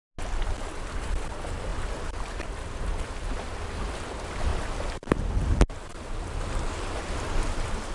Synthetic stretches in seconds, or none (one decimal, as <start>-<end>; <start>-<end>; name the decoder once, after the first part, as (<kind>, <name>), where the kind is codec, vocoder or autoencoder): none